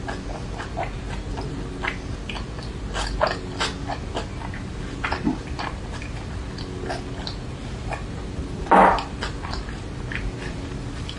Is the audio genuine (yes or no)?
yes